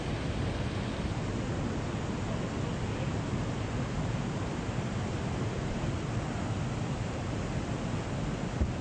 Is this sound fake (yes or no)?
no